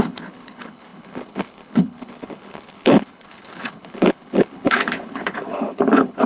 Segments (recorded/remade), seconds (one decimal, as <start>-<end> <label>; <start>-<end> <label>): 0.0-6.3 remade